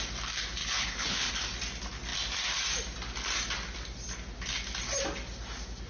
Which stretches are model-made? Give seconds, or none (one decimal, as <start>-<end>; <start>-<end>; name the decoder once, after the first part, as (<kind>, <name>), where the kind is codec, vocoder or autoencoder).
0.6-1.3 (codec, HILCodec)